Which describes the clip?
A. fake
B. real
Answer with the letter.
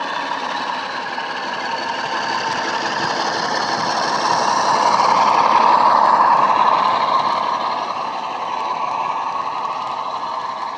B